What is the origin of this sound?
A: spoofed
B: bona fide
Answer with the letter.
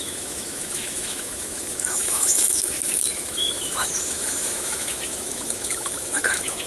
A